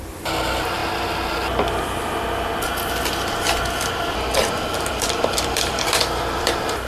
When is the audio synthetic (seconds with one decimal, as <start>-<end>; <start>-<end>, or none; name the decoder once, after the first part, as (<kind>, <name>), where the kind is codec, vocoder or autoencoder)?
0.0-0.8 (vocoder, BigVGAN v2); 4.5-6.9